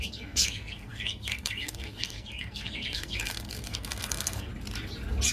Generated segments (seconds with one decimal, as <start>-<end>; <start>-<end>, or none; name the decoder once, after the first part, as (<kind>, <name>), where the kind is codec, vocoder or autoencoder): 0.0-4.5 (codec, SNAC)